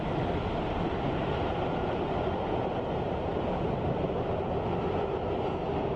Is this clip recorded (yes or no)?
yes